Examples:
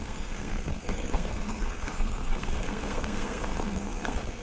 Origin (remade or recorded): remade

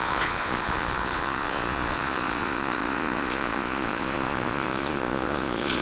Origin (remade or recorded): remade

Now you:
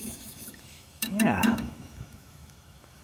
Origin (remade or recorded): remade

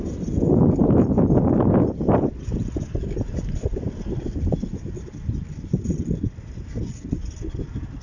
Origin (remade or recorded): recorded